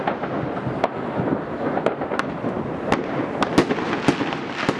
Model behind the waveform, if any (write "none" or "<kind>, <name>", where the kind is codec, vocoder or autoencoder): none